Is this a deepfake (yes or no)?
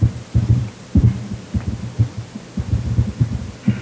yes